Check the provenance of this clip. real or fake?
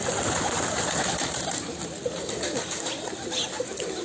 real